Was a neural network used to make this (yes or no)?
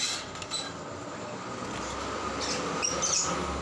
no